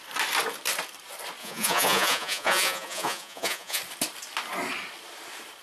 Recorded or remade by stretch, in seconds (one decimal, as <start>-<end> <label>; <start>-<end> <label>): 0.0-1.4 recorded; 1.4-3.8 remade; 3.8-5.6 recorded